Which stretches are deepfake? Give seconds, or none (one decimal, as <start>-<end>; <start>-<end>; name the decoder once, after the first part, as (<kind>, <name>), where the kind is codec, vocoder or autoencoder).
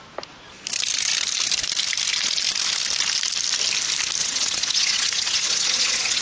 4.2-6.2 (vocoder, Vocos)